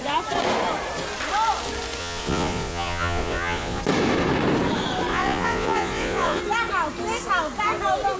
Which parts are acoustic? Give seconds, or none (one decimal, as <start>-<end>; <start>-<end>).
0.0-2.0; 3.8-5.1; 6.4-8.2